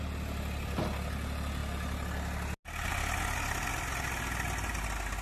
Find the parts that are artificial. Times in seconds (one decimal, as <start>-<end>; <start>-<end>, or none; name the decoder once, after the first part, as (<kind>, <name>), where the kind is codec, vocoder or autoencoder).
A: none